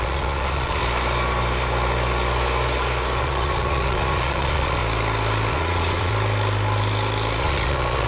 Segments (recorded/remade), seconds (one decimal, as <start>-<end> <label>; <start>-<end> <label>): 0.0-0.8 remade; 0.8-3.2 recorded; 3.2-4.8 remade; 4.8-5.5 recorded; 5.5-6.1 remade; 6.1-7.4 recorded; 7.4-8.1 remade